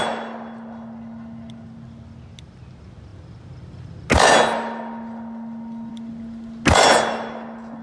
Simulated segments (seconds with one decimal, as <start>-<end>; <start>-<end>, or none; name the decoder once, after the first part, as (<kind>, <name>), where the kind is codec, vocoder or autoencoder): none